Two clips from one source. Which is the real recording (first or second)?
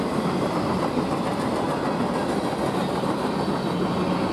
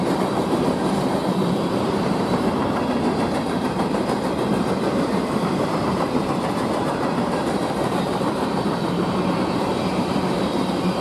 first